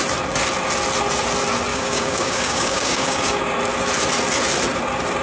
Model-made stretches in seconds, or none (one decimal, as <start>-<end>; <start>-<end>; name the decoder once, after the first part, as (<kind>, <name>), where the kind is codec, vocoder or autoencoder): 1.7-3.4 (codec, DAC)